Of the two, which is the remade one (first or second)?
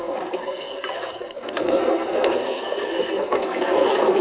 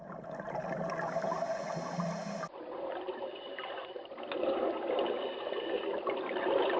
first